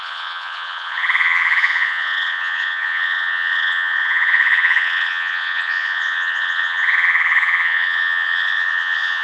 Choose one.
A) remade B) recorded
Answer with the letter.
A